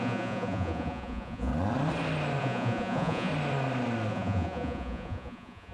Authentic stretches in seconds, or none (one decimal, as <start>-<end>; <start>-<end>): 1.5-2.4; 3.3-4.1

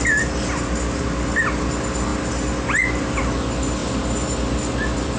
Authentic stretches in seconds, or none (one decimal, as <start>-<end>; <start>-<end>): 0.0-5.2

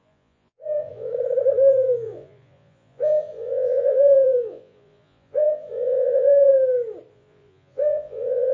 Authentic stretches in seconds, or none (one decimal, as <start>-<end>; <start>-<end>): 1.1-1.7; 6.5-7.1

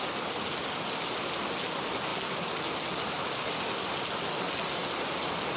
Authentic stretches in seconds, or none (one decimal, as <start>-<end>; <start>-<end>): 0.0-5.6

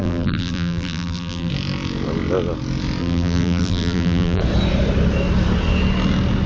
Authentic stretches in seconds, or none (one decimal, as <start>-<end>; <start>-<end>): 1.5-3.0; 4.4-6.5

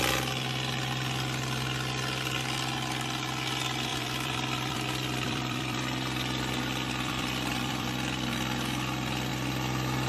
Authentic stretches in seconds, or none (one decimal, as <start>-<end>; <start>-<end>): 0.0-3.9; 7.9-10.1